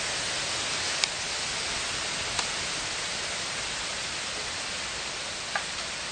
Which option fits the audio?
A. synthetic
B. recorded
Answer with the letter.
B